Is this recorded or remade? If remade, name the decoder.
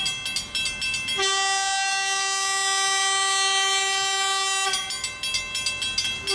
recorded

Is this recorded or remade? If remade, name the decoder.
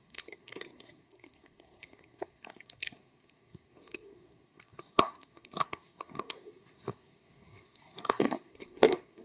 remade, codec, SNAC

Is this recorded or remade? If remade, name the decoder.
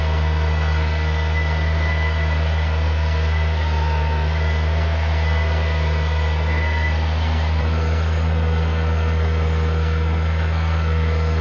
remade, codec, SNAC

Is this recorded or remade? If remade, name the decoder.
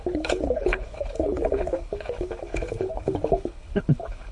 remade, codec, HILCodec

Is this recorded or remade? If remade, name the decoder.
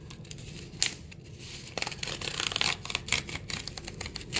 recorded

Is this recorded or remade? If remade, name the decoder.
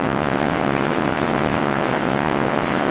remade, vocoder, WaveNeXt